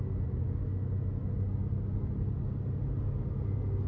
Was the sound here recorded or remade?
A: recorded